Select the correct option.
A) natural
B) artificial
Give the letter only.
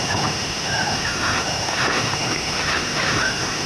B